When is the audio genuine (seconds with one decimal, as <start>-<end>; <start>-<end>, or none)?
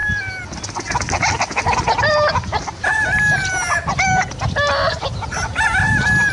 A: 0.0-6.3